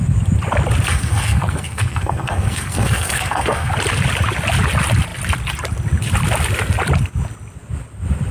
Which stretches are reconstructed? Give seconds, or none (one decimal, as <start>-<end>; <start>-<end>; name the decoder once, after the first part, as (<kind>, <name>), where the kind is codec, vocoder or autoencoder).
0.9-3.7 (codec, SNAC)